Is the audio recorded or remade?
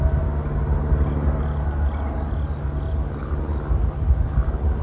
recorded